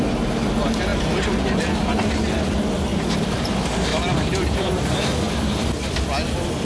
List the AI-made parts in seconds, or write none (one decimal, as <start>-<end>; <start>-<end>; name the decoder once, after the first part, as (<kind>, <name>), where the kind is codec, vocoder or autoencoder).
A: 2.9-3.5 (vocoder, BigVGAN v2); 3.9-5.7